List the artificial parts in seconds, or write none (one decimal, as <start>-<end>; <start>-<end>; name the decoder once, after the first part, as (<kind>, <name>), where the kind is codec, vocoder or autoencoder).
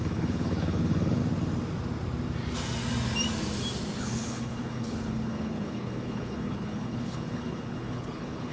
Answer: 0.0-1.2 (codec, HILCodec); 4.0-8.5